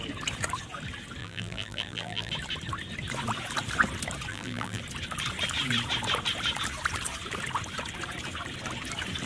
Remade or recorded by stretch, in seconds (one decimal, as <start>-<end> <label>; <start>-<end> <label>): 0.0-1.2 recorded; 1.2-2.3 remade; 2.3-4.3 recorded; 4.3-4.8 remade; 4.8-9.3 recorded